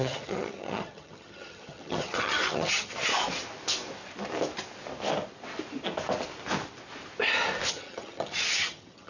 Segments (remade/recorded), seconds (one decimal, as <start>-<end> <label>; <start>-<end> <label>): 0.0-3.1 remade; 3.1-7.7 recorded; 7.7-9.1 remade